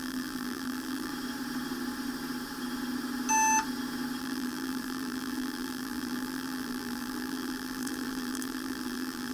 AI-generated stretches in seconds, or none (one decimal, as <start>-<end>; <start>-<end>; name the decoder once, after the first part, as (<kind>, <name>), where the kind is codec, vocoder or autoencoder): 0.0-1.1 (vocoder, BigVGAN v2); 4.2-9.3